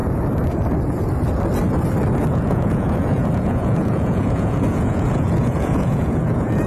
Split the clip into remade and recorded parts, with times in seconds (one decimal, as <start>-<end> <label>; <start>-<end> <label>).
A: 0.0-2.3 recorded; 2.3-6.7 remade